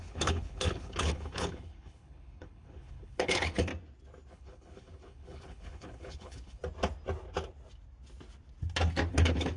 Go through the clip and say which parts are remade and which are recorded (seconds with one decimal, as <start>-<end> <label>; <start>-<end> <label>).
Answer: 0.0-3.7 remade; 3.7-4.3 recorded; 4.3-6.6 remade; 6.6-9.1 recorded; 9.1-9.6 remade